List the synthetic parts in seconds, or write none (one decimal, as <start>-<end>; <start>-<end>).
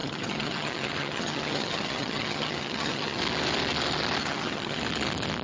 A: 0.0-3.2; 4.2-4.8